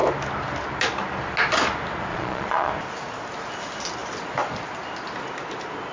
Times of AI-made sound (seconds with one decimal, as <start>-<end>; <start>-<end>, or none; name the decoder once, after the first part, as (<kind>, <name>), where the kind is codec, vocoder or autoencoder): 2.1-2.7 (vocoder, Vocos)